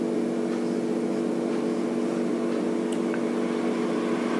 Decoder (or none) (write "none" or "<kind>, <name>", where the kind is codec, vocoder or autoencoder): none